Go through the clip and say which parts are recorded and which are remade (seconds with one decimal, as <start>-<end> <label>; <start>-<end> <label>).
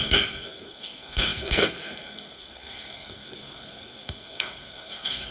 0.0-5.3 remade